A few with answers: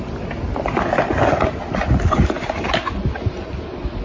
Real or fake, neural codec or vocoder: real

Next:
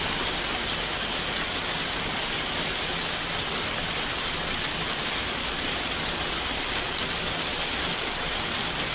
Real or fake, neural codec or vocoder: real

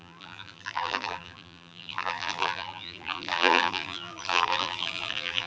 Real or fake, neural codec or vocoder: fake, vocoder, BigVGAN v2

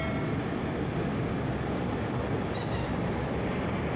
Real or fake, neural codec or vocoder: real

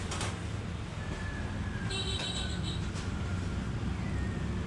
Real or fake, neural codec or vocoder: real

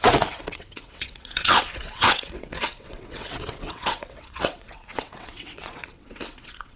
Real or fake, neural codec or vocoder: fake, vocoder, WaveNeXt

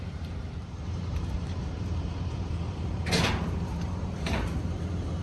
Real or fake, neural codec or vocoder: fake, vocoder, BigVGAN v2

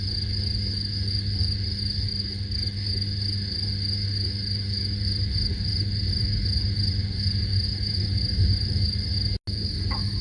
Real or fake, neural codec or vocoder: real